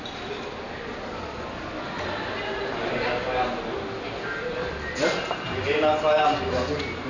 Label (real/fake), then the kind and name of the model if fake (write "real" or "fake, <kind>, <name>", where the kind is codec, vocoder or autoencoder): real